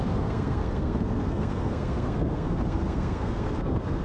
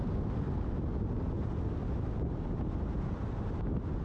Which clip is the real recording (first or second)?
second